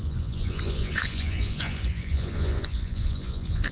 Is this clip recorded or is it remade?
remade